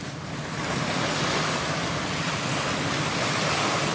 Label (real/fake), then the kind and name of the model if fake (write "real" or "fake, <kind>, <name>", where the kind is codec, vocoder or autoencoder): real